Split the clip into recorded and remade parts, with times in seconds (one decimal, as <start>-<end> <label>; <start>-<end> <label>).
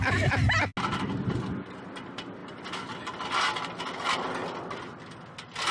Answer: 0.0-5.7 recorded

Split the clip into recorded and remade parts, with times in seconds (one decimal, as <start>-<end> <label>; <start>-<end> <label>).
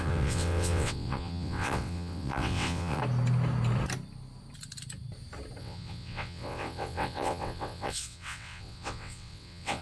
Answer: 0.0-3.0 remade; 3.0-5.6 recorded; 5.6-9.8 remade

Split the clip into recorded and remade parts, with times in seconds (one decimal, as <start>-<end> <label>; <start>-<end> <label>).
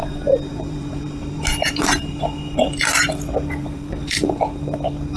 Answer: 0.0-3.1 remade; 3.1-3.6 recorded; 3.6-4.4 remade; 4.4-5.2 recorded